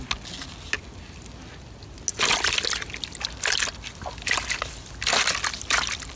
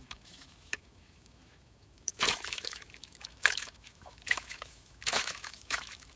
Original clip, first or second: first